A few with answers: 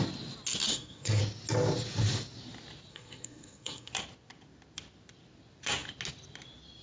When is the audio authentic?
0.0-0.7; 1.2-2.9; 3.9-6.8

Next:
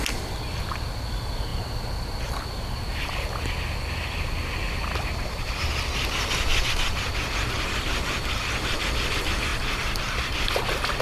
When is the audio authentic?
0.0-11.0